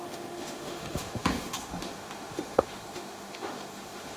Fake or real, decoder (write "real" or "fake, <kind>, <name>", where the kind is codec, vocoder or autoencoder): fake, autoencoder, DAC-VAE